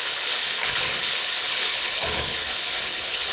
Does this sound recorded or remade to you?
remade